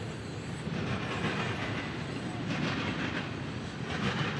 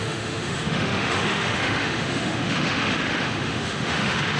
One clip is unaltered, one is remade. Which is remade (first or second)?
second